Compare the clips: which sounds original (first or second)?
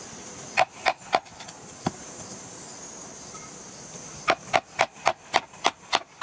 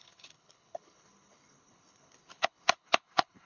first